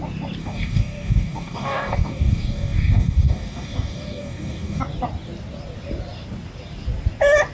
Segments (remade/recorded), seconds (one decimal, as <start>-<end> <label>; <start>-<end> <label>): 0.0-0.4 recorded; 0.4-4.8 remade; 4.8-7.5 recorded